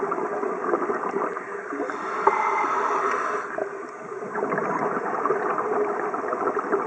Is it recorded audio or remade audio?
recorded